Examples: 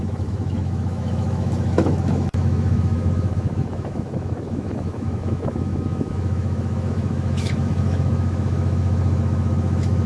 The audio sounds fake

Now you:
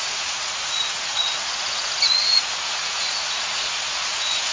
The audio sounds fake